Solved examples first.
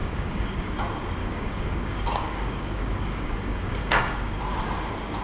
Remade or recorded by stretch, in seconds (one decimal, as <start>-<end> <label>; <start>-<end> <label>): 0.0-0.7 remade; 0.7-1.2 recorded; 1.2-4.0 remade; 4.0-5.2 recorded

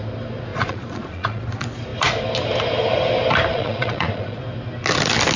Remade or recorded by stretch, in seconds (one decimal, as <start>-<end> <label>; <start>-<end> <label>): 0.0-0.5 recorded; 0.5-1.4 remade; 1.4-3.5 recorded; 3.5-4.4 remade; 4.4-5.4 recorded

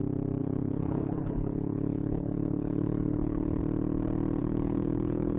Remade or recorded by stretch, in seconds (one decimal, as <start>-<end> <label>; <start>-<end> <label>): 0.0-0.4 recorded; 0.4-3.6 remade; 3.6-4.4 recorded; 4.4-5.4 remade

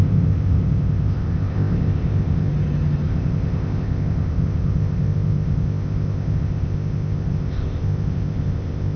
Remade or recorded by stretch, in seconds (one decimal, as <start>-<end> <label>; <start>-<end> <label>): 0.0-2.5 remade; 2.5-3.1 recorded; 3.1-9.0 remade

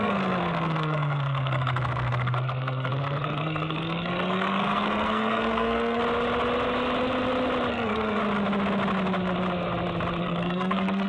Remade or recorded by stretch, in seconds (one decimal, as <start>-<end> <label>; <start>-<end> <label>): 0.0-6.0 remade; 6.0-7.7 recorded; 7.7-8.2 remade; 8.2-10.2 recorded; 10.2-11.1 remade

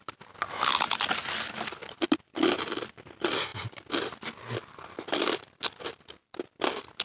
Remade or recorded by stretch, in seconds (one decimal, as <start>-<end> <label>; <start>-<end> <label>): 0.0-7.0 recorded

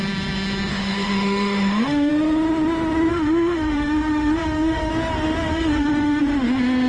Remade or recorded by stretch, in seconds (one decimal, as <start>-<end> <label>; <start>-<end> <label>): 0.0-0.7 recorded; 0.7-2.1 remade; 2.1-3.1 recorded; 3.1-4.9 remade; 4.9-5.5 recorded; 5.5-6.2 remade; 6.2-6.9 recorded